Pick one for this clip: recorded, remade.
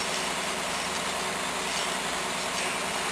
recorded